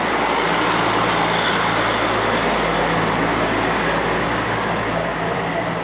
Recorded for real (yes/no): yes